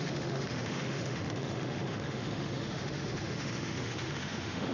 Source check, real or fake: fake